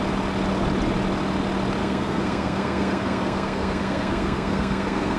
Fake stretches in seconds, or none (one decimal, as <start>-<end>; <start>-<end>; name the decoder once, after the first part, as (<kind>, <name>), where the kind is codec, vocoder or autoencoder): 1.8-5.2 (codec, SNAC)